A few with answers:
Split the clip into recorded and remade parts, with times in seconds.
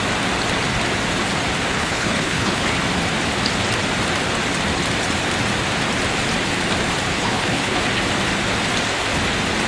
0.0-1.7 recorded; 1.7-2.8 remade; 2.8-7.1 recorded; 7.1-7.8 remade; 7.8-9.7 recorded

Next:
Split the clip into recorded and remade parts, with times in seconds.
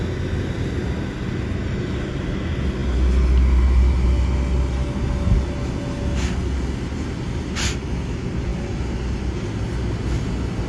0.0-10.7 recorded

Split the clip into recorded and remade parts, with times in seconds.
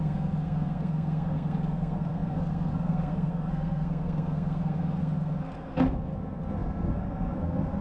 0.0-7.8 remade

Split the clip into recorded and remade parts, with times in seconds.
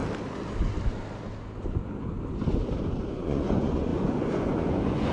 0.0-3.1 recorded; 3.1-5.1 remade